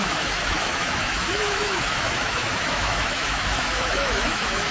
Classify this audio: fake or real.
fake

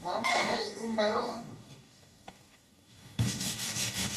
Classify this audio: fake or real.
fake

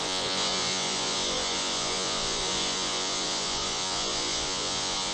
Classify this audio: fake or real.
fake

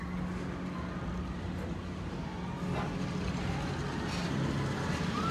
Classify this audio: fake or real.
real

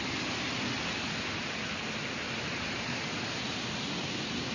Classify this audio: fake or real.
real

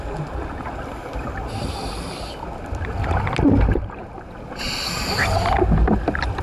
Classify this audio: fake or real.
real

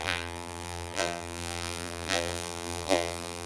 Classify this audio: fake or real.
fake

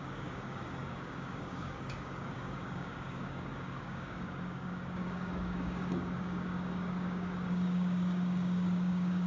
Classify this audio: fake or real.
fake